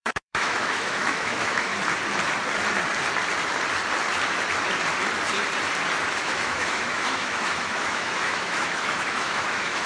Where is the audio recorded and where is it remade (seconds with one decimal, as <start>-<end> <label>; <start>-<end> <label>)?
0.0-1.7 remade; 1.7-6.1 recorded; 6.1-9.9 remade